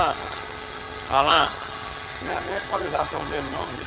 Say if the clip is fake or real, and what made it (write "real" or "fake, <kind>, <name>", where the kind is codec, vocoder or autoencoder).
fake, vocoder, HiFi-GAN